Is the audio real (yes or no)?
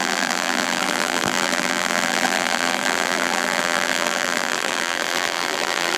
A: no